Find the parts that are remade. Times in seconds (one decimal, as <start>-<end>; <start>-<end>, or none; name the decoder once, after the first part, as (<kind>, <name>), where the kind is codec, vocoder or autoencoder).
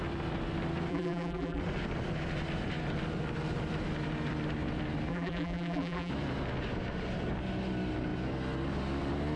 0.9-1.6 (vocoder, BigVGAN v2); 5.1-6.1